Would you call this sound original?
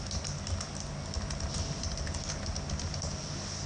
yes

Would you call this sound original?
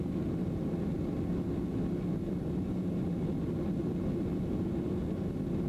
yes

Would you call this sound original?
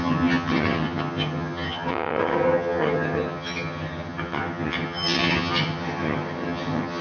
no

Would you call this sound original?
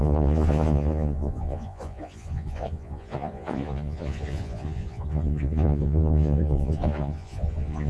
no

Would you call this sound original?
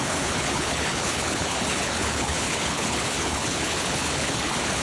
no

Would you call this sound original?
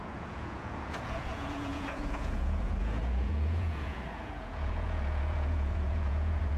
no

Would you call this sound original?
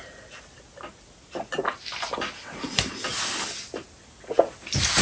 yes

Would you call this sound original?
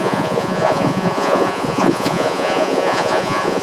no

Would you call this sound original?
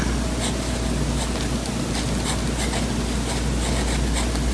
yes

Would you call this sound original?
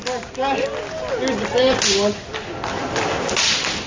yes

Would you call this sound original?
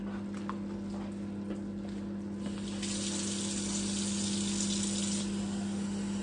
yes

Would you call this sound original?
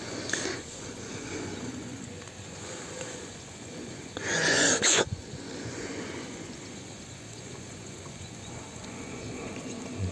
no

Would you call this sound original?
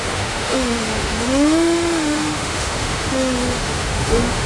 no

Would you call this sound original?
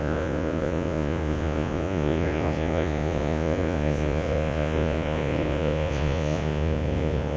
no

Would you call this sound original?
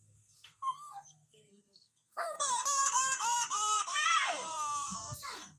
no